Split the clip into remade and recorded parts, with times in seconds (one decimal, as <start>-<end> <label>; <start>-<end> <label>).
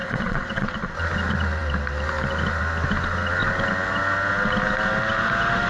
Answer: 0.0-0.7 remade; 0.7-5.7 recorded